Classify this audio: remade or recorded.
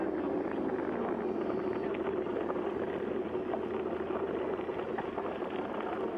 recorded